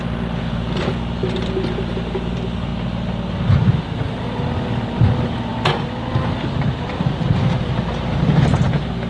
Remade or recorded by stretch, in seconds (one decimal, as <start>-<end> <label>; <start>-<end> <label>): 0.0-9.1 recorded